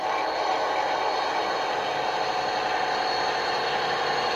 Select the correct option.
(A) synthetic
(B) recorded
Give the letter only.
B